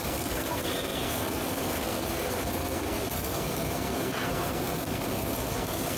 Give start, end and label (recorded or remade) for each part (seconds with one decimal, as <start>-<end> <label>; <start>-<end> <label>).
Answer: 0.0-6.0 remade